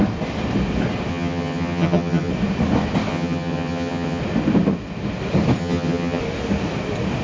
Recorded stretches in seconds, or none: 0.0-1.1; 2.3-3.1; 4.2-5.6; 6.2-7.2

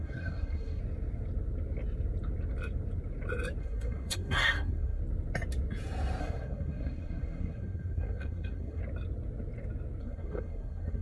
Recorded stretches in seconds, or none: 0.8-3.6; 5.0-6.2; 8.8-10.0

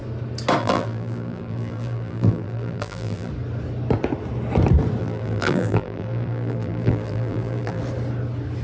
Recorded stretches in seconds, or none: 0.0-0.6; 3.3-5.0; 7.8-8.6